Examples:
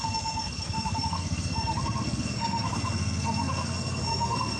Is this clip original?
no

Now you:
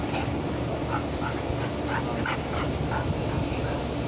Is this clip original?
yes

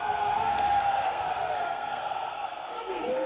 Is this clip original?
no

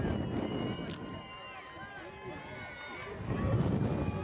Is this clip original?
yes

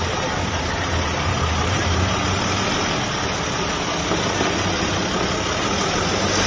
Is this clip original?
yes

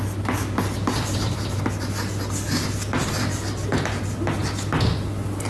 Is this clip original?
yes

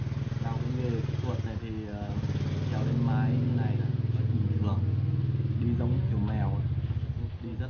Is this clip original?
yes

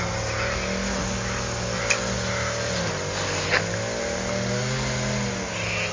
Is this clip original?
yes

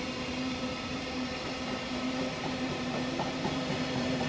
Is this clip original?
no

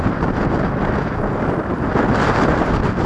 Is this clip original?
yes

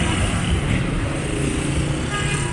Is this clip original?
yes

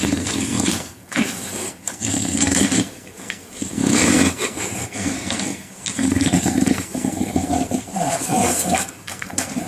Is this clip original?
no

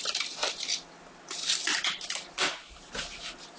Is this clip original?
yes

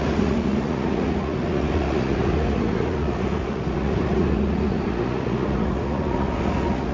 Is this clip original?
no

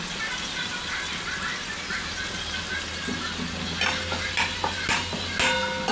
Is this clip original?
yes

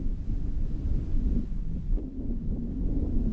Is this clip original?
yes